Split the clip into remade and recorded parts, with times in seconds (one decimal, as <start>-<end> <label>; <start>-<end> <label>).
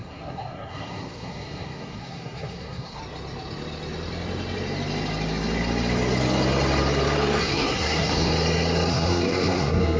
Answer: 0.0-3.0 remade; 3.0-7.4 recorded; 7.4-8.3 remade; 8.3-8.9 recorded; 8.9-10.0 remade